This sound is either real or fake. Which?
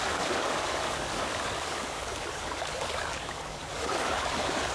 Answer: fake